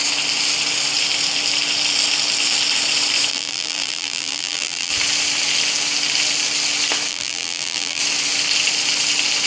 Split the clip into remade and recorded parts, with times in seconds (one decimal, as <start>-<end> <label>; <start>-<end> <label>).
0.0-3.3 recorded; 3.3-4.9 remade; 4.9-7.1 recorded; 7.1-8.0 remade; 8.0-9.5 recorded